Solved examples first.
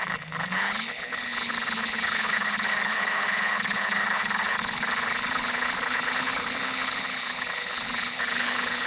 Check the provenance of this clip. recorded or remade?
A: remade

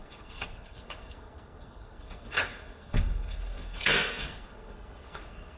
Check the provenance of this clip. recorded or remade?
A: remade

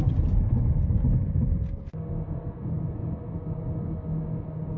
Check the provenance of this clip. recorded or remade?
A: recorded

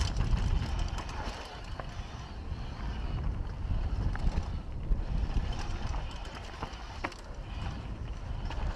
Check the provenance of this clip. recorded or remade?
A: recorded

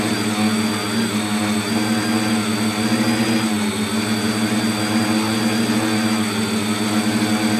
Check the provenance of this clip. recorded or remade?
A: recorded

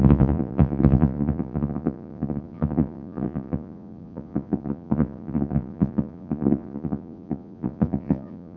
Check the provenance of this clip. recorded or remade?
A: remade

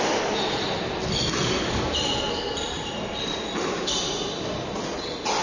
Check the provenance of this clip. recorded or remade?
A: recorded